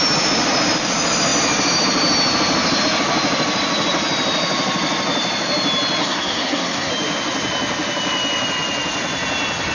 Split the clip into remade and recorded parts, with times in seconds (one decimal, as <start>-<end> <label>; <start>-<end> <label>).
0.0-6.0 recorded; 6.0-6.9 remade; 6.9-9.7 recorded